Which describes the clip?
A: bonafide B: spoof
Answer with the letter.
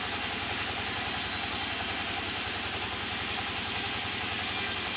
A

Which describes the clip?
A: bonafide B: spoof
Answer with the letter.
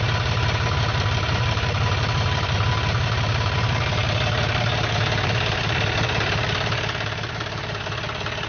B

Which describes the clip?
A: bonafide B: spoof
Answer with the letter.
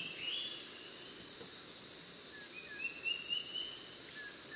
A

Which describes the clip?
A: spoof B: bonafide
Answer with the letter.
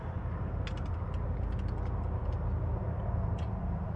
B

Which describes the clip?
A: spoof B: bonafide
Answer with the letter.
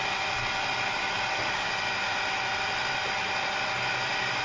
B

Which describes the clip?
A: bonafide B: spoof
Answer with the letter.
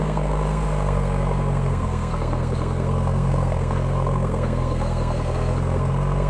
B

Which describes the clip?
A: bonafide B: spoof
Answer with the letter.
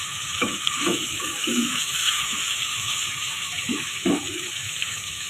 B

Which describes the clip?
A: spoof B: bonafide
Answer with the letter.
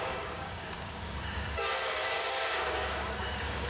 A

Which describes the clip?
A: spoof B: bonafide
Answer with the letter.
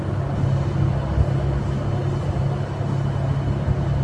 B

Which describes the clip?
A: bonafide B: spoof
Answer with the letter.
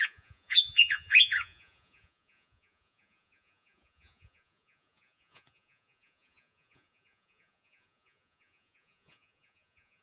B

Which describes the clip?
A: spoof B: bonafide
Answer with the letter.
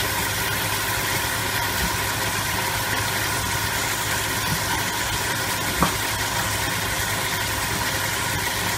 B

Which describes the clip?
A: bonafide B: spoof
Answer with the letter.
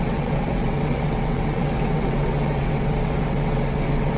B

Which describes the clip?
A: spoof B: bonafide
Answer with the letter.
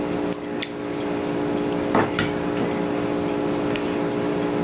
B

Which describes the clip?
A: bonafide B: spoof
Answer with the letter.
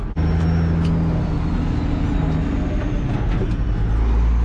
A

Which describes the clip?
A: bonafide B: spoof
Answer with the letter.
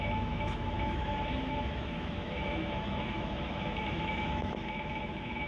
B